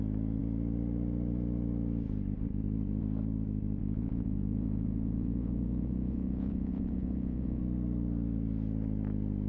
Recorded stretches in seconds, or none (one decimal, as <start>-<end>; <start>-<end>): 0.0-3.8; 7.6-9.5